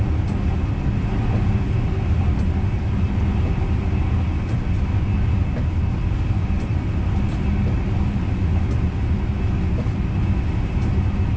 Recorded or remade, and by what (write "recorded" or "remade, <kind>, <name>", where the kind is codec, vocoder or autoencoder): recorded